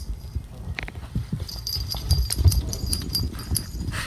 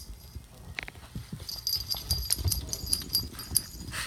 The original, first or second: second